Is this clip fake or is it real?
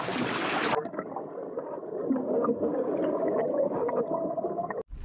real